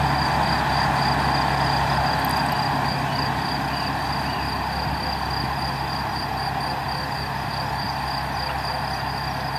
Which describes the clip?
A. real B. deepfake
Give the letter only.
A